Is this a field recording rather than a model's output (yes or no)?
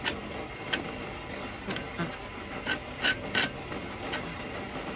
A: yes